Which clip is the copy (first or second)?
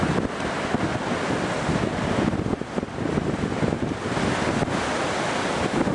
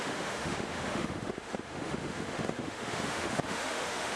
second